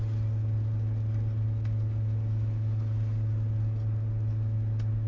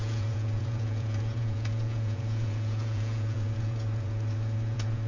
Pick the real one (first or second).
first